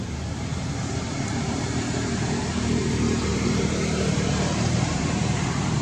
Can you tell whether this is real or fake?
fake